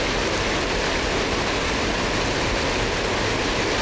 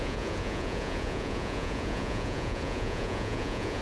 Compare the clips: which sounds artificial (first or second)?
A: second